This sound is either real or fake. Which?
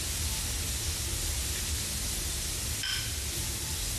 real